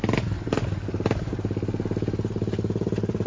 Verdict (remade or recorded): recorded